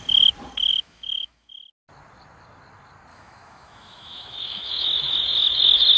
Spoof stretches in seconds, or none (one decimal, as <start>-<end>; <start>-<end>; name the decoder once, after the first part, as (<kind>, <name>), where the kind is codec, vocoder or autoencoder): 0.7-1.5 (autoencoder, DAC-VAE); 3.1-6.0